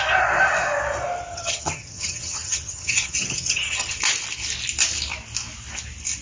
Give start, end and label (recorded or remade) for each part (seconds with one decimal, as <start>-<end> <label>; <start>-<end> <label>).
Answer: 0.0-1.3 recorded; 1.3-4.0 remade; 4.0-6.2 recorded